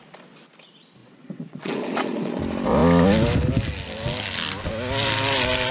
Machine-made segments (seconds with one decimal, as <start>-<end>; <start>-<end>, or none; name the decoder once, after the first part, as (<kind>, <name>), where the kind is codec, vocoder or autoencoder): 1.0-2.4 (vocoder, Vocos)